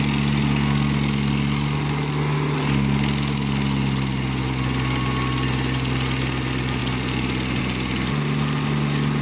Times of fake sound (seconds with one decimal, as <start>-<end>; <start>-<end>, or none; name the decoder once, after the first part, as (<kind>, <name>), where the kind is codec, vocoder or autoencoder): none